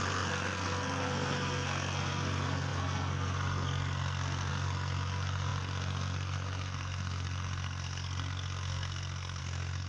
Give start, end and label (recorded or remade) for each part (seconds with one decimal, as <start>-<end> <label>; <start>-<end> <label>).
0.0-9.9 remade